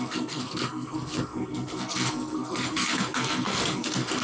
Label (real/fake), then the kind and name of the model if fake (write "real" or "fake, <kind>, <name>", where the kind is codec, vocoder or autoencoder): fake, codec, SNAC